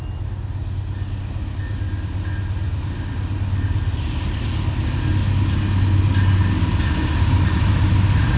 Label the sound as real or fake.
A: real